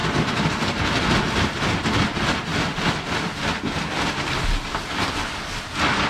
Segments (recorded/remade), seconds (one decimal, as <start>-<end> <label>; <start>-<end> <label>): 0.0-4.7 recorded; 4.7-5.6 remade; 5.6-6.1 recorded

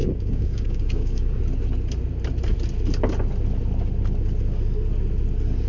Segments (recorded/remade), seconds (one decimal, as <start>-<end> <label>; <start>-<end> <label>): 0.0-1.4 remade; 1.4-5.7 recorded

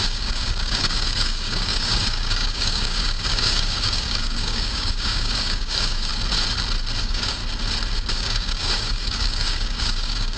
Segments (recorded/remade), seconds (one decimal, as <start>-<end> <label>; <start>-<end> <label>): 0.0-6.1 remade; 6.1-7.0 recorded; 7.0-7.4 remade; 7.4-8.1 recorded; 8.1-10.4 remade